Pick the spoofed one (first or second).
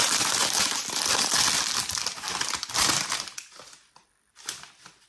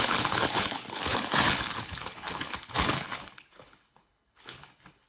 second